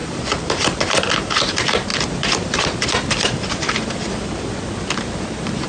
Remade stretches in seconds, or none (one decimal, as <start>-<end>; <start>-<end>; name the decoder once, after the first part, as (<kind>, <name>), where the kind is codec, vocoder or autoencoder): 0.0-0.8 (vocoder, BigVGAN v2); 1.9-4.7